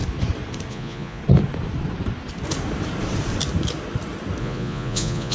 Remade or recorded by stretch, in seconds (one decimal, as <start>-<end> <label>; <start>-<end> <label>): 0.0-0.7 recorded; 0.7-1.2 remade; 1.2-4.4 recorded; 4.4-5.3 remade